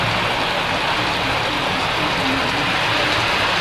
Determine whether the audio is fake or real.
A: real